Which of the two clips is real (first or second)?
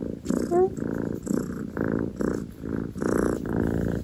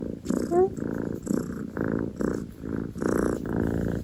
first